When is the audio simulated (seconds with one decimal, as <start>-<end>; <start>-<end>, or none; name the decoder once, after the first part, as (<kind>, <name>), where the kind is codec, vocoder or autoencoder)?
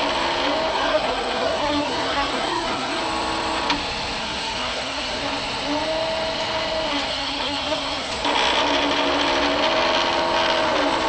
0.7-3.0 (codec, SNAC); 4.2-5.2; 7.1-8.1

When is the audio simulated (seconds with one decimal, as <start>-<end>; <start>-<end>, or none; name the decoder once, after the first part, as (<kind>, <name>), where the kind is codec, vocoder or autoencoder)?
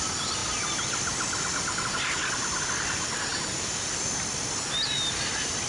none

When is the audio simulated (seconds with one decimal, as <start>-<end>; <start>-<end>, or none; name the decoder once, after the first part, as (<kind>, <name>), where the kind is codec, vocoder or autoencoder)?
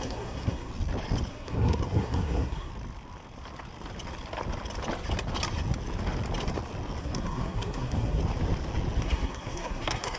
0.0-0.7 (codec, SNAC); 1.3-2.7; 7.0-8.2; 9.0-10.2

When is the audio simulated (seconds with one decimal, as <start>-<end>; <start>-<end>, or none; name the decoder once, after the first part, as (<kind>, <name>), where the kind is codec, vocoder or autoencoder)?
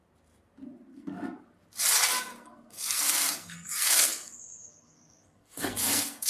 0.9-1.4 (codec, SNAC); 2.3-6.3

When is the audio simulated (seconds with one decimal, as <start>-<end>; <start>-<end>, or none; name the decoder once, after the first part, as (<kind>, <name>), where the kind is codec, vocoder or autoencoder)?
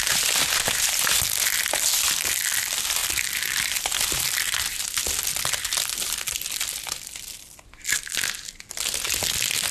none